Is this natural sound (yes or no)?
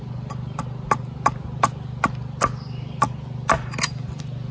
yes